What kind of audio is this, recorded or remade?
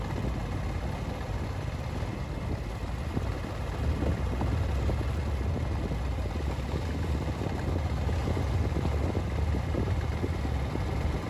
recorded